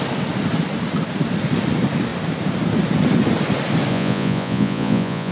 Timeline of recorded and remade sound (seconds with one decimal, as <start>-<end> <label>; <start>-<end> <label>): 0.0-3.9 recorded; 3.9-5.3 remade